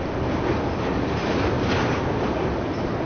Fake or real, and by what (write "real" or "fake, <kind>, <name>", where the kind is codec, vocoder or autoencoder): real